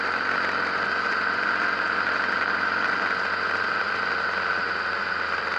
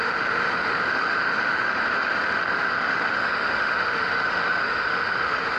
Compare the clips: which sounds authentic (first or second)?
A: first